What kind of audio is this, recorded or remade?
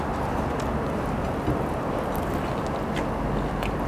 recorded